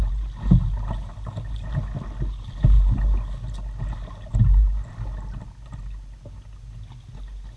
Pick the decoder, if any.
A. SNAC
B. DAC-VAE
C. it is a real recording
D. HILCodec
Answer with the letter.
C